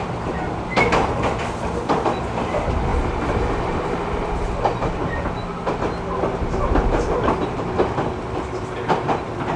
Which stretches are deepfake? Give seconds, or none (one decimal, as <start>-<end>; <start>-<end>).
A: none